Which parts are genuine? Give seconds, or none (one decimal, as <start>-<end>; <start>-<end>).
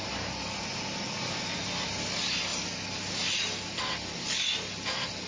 0.0-5.3